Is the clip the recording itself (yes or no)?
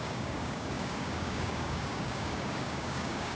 no